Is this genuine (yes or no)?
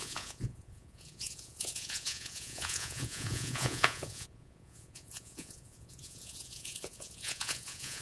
no